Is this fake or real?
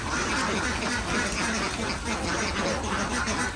real